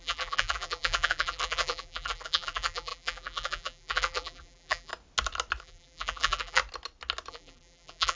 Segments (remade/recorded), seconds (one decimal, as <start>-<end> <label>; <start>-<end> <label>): 0.0-4.9 remade; 4.9-5.6 recorded; 5.6-6.6 remade; 6.6-7.3 recorded; 7.3-8.2 remade